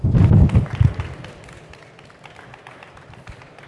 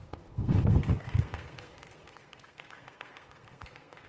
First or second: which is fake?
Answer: second